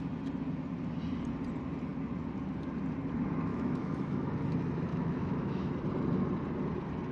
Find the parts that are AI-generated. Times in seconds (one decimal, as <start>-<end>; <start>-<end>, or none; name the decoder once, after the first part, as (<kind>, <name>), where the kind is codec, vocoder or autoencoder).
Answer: 3.5-4.3 (autoencoder, DAC-VAE); 4.9-5.7